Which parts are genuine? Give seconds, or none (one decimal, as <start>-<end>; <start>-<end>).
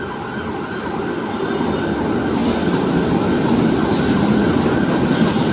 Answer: 0.0-5.5